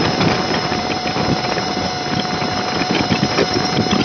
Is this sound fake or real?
fake